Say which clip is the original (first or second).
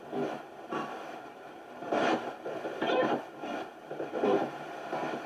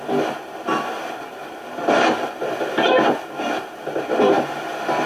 second